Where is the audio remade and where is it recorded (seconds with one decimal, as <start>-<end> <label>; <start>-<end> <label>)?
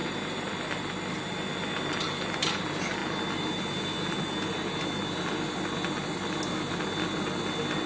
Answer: 0.0-7.9 recorded